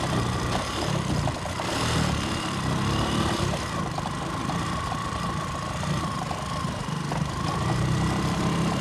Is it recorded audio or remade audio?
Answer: recorded